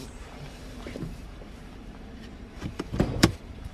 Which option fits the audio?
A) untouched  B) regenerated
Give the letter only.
B